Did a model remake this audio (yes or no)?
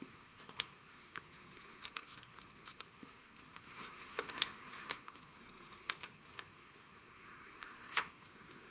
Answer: yes